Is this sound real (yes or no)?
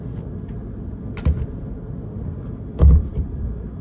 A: yes